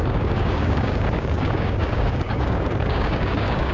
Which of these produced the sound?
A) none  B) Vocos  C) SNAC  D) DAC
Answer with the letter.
D